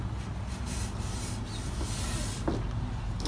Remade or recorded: recorded